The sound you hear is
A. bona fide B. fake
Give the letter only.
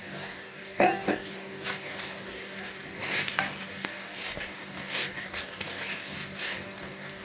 B